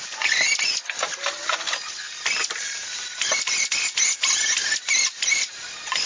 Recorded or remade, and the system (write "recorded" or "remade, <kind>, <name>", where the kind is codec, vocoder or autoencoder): recorded